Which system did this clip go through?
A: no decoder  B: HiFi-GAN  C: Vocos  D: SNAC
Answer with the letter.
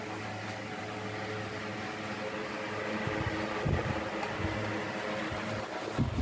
A